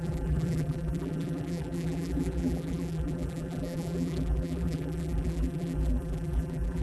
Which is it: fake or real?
fake